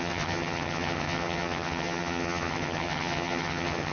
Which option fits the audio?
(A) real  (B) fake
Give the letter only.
B